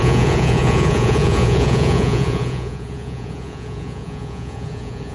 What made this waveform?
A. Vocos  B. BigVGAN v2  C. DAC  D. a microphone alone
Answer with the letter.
A